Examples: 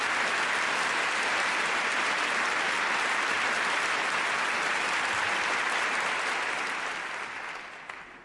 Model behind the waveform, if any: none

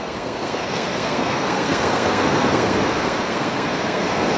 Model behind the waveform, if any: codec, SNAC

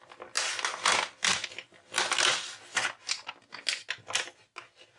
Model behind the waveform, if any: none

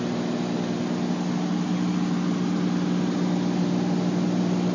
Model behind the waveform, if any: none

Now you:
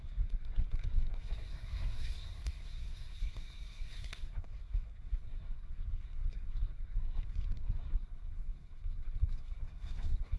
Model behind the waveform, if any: codec, SNAC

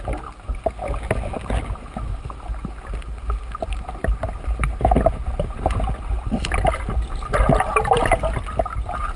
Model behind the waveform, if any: none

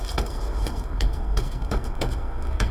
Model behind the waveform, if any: codec, SNAC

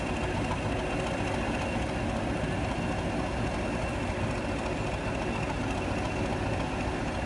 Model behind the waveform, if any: none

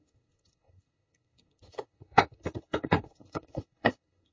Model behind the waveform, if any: codec, SNAC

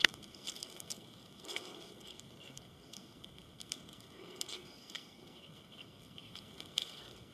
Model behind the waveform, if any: codec, SNAC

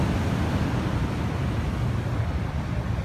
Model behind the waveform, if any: none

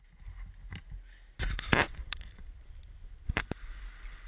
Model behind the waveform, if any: none